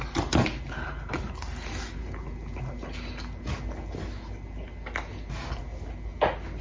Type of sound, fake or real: real